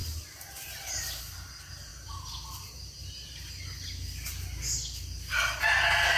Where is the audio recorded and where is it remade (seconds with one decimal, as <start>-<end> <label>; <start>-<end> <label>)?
0.0-6.2 recorded